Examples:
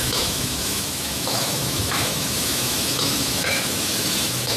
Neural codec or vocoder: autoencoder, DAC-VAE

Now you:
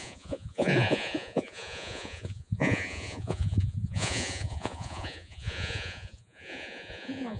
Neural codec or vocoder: vocoder, Vocos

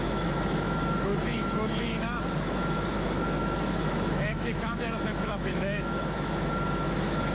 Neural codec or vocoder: autoencoder, DAC-VAE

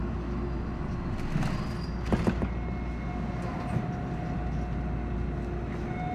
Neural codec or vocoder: none